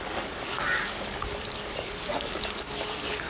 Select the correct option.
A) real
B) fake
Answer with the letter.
B